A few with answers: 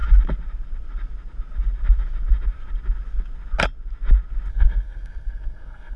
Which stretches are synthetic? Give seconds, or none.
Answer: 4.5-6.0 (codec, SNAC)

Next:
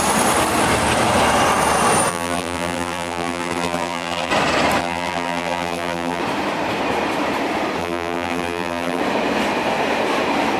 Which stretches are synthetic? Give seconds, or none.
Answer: 2.1-4.3 (vocoder, BigVGAN v2); 4.8-6.2; 7.8-9.0

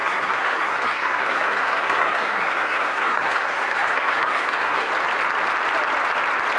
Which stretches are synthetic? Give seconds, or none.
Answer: 0.0-4.9 (codec, SNAC)

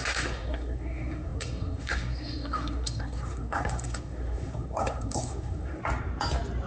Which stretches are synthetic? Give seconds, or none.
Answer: 0.0-5.8 (codec, SNAC)

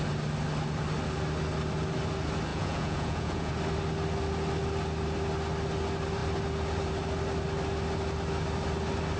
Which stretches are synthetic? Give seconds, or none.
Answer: 2.5-3.5 (vocoder, Vocos)